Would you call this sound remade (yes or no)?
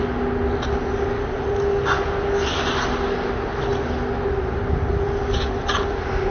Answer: no